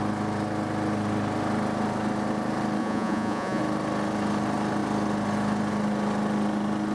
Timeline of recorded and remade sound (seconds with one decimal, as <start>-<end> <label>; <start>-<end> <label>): 0.0-2.8 recorded; 2.8-3.6 remade; 3.6-6.9 recorded